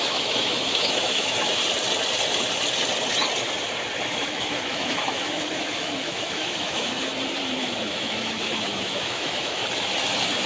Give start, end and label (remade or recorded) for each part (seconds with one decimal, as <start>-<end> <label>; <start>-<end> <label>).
0.0-1.6 remade; 1.6-4.1 recorded; 4.1-7.1 remade; 7.1-7.6 recorded; 7.6-9.6 remade; 9.6-10.5 recorded